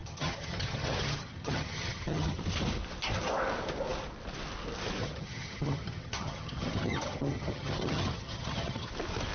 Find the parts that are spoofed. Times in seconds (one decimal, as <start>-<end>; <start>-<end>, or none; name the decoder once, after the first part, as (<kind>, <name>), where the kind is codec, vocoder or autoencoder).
0.0-2.4 (vocoder, HiFi-GAN); 5.0-8.9